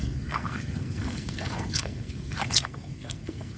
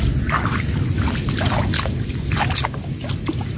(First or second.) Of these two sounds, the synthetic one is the first